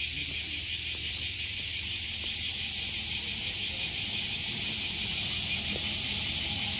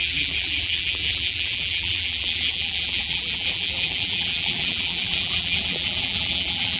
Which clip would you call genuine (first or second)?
first